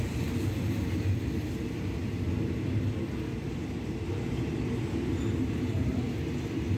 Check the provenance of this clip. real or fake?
real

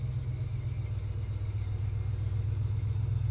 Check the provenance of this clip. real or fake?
real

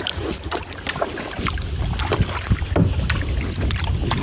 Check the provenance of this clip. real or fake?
real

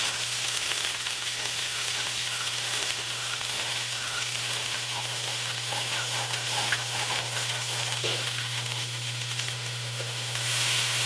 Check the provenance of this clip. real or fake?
fake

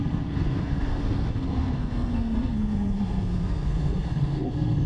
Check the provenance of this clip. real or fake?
fake